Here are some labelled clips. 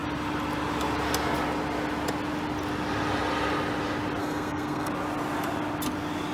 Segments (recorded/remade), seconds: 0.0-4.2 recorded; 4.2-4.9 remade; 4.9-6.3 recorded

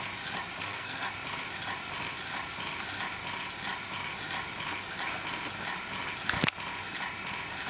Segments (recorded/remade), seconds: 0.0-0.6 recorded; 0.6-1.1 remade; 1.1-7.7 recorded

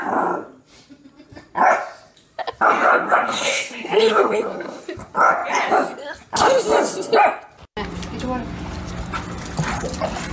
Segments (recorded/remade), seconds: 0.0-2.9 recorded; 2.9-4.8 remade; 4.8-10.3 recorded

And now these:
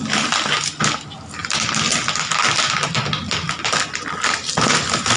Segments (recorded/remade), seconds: 0.0-5.2 recorded